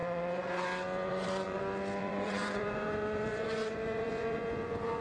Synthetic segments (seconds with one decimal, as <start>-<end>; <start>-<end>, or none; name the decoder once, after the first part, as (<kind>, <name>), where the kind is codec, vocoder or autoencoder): 0.0-0.5 (vocoder, Vocos); 1.1-1.6; 2.0-5.0